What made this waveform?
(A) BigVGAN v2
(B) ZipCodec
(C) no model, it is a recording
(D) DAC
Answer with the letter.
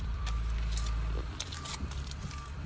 A